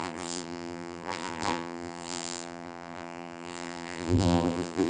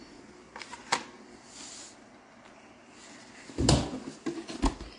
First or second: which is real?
second